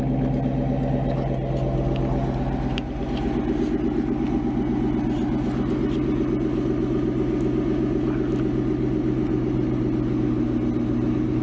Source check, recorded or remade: recorded